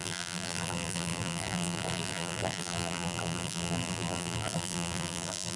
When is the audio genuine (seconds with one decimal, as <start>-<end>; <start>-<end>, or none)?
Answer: none